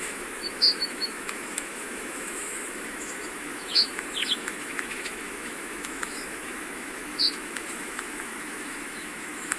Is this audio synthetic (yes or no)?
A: yes